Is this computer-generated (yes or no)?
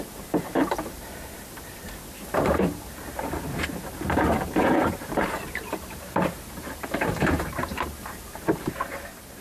yes